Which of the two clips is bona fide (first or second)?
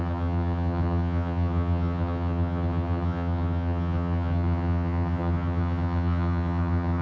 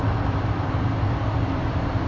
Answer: second